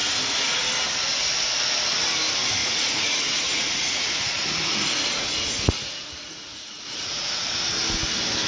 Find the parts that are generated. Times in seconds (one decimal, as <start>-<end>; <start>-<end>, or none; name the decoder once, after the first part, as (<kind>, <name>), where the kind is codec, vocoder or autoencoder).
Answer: 0.0-0.6 (vocoder, Vocos); 2.6-7.5